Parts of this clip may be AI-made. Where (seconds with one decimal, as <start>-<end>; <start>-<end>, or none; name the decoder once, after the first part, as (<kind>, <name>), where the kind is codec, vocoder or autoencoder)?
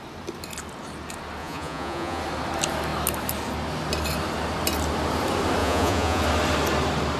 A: 1.4-2.2 (vocoder, Vocos); 5.6-6.2